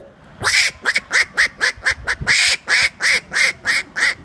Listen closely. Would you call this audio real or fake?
real